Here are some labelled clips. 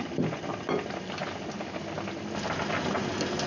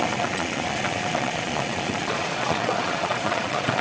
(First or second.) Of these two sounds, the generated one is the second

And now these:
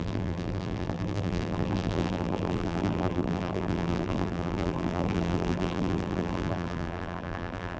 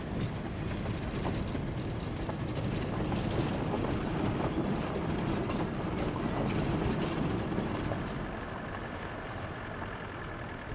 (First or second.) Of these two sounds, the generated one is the first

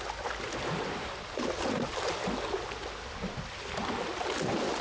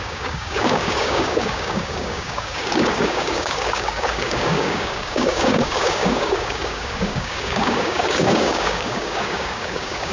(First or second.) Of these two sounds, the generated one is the second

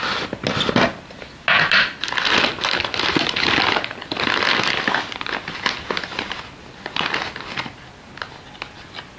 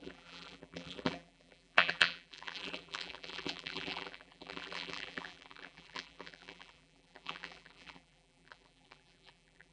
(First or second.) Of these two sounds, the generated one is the second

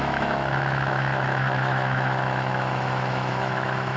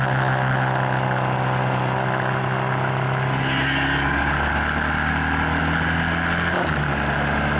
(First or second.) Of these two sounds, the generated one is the first